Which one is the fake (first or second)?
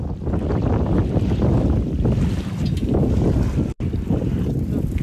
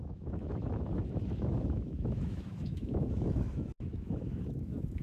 second